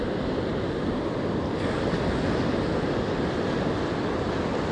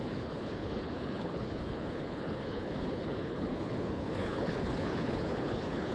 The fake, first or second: second